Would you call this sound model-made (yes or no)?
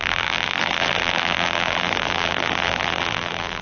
yes